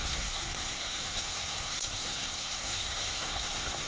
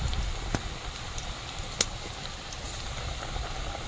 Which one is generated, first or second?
first